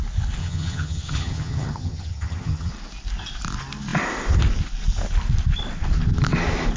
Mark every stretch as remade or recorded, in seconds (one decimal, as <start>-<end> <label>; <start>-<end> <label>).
0.0-0.4 recorded; 0.4-2.7 remade; 2.7-6.8 recorded

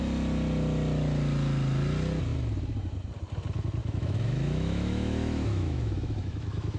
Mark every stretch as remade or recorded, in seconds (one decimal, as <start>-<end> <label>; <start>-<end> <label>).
0.0-3.8 recorded; 3.8-6.8 remade

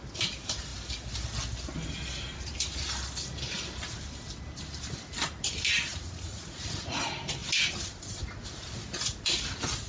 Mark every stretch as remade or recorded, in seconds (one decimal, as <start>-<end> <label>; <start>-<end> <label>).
0.0-5.9 recorded; 5.9-7.0 remade; 7.0-9.9 recorded

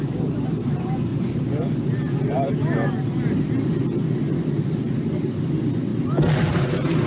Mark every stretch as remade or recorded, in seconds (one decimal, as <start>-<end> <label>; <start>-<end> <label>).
0.0-1.1 remade; 1.1-5.2 recorded; 5.2-5.9 remade; 5.9-6.5 recorded; 6.5-7.1 remade

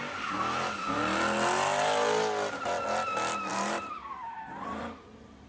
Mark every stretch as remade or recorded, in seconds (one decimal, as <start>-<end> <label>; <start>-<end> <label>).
0.0-3.5 recorded; 3.5-4.8 remade; 4.8-5.5 recorded

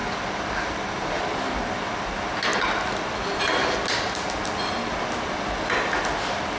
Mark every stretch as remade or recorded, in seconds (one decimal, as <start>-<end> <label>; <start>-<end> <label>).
0.0-6.6 recorded

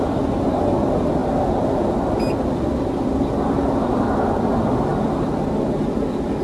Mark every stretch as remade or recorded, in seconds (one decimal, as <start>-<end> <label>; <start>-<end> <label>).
0.0-6.4 recorded